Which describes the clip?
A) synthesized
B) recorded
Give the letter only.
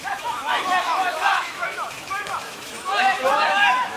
A